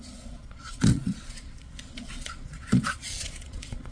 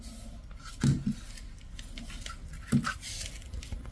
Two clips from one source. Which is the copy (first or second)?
first